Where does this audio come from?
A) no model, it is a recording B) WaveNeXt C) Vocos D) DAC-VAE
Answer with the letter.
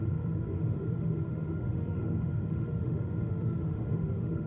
D